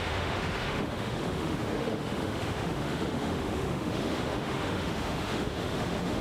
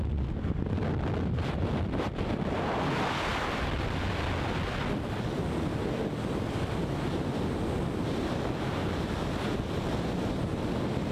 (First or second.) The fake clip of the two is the first